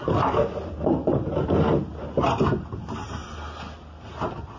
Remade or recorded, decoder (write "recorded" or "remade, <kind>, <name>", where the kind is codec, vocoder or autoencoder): recorded